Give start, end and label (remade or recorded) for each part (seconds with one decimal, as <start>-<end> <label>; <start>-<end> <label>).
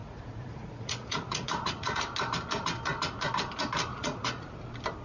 0.0-2.0 remade; 2.0-3.9 recorded; 3.9-4.5 remade; 4.5-5.0 recorded